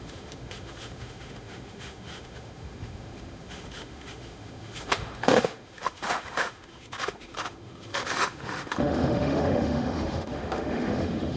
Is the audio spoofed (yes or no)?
yes